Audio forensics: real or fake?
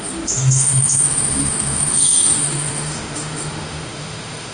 fake